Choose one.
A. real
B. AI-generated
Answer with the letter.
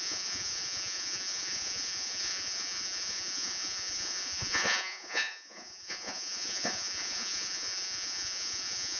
B